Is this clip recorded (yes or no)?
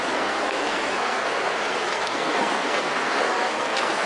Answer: no